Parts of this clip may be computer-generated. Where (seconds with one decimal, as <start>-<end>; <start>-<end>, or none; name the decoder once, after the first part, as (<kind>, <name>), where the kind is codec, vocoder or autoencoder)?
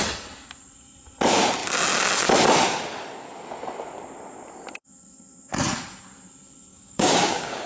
6.7-7.7 (codec, DAC)